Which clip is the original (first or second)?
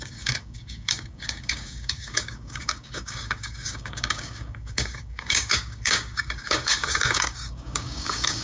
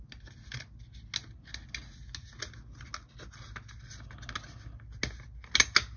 second